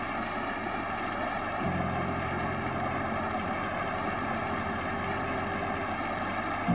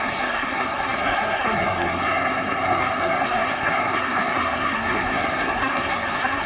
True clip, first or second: first